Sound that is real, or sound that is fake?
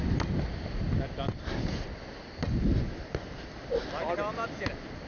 real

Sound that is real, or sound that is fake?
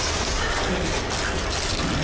real